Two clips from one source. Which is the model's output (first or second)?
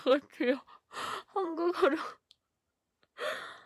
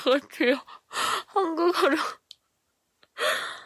first